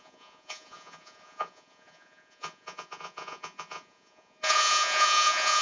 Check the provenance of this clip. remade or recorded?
remade